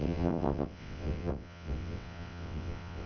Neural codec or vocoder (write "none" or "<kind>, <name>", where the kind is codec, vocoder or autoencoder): vocoder, WaveNeXt